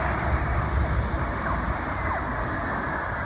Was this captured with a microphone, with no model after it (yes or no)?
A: yes